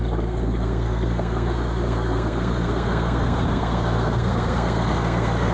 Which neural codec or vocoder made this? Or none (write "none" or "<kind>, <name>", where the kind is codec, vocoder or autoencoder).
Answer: codec, SNAC